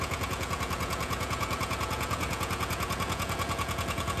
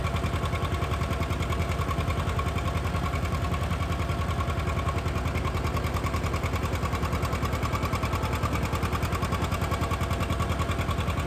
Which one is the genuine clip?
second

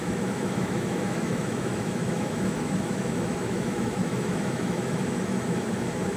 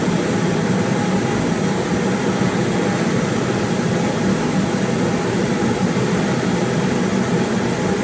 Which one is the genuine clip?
second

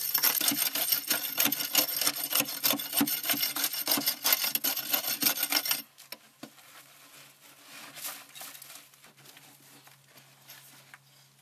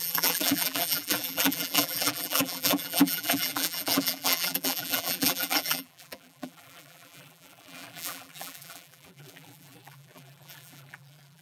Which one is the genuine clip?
first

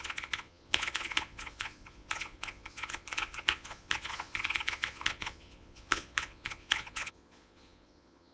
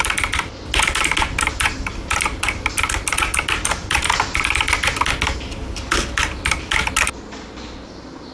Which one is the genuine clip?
second